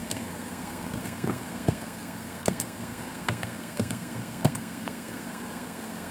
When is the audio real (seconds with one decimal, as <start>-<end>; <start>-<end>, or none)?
none